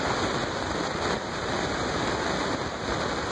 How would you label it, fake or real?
real